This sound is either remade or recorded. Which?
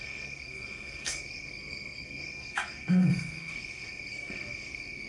remade